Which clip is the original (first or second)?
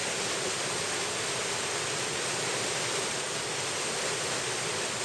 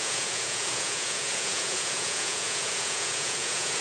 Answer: first